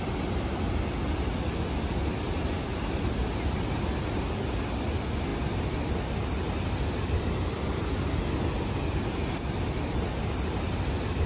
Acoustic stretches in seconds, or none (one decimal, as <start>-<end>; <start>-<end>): 0.0-11.3